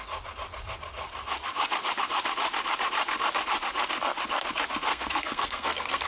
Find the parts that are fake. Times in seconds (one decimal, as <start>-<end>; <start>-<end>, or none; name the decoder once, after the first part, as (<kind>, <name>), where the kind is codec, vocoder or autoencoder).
4.9-6.1 (codec, SNAC)

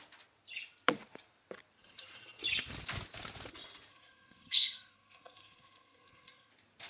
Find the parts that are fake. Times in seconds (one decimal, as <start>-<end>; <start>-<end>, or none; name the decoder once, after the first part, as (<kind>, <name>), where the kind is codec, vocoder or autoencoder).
3.9-6.5 (codec, SNAC)

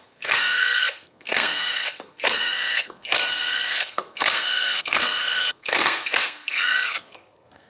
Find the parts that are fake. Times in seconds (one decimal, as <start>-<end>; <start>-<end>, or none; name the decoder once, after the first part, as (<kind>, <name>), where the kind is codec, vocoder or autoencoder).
0.0-7.7 (codec, SNAC)

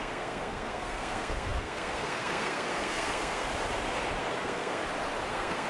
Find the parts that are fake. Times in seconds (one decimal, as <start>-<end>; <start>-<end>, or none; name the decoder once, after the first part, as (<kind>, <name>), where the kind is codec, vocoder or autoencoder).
0.0-3.5 (codec, SNAC); 4.2-4.8; 5.3-5.7